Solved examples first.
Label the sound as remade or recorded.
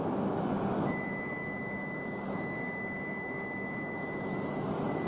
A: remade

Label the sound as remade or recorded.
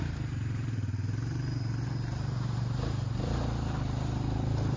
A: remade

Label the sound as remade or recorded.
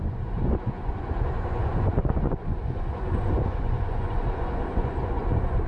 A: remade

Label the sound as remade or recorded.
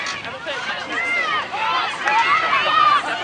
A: recorded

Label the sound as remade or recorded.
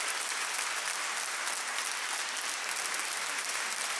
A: recorded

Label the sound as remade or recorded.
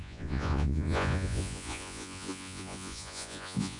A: remade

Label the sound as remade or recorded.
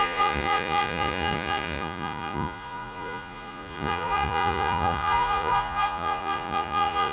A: remade